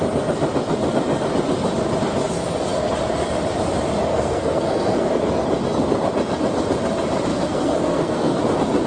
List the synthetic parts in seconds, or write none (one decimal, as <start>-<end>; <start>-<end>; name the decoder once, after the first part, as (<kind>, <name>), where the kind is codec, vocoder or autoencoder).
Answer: 4.1-5.1 (codec, SNAC); 7.3-8.4